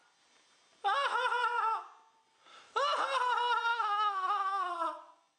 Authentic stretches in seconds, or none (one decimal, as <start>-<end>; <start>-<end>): 0.0-3.7; 4.7-5.4